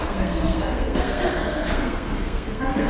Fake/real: fake